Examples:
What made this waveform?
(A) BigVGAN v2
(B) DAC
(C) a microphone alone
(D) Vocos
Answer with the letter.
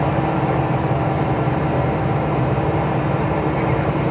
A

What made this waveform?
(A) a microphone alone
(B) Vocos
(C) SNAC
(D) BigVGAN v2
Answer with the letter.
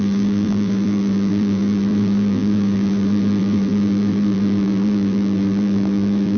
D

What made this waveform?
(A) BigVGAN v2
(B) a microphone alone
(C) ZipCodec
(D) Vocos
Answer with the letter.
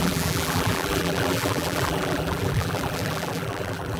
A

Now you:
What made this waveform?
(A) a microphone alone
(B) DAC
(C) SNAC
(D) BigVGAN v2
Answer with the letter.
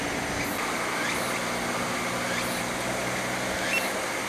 A